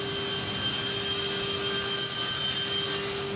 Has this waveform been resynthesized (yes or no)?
no